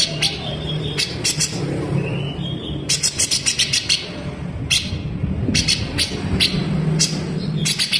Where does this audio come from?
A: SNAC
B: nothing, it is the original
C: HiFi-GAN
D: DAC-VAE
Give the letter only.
B